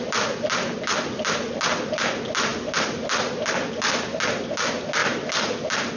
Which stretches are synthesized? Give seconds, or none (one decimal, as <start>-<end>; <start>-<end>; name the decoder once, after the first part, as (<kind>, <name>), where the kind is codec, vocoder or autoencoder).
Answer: none